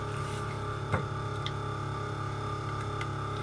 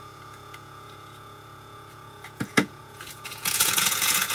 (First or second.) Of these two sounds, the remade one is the second